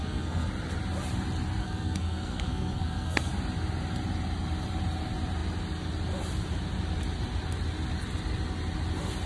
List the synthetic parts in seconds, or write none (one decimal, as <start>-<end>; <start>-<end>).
0.0-0.5; 1.6-3.3